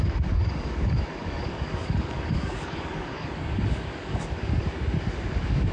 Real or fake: fake